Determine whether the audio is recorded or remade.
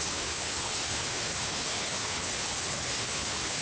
remade